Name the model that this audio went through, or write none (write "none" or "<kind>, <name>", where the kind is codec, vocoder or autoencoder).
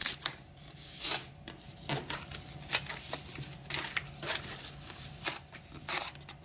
none